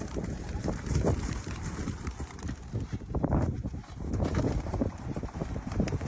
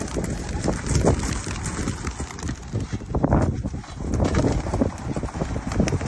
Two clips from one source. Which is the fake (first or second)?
first